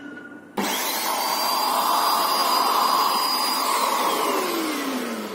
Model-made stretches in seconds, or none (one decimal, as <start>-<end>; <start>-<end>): 0.8-1.6; 2.4-4.0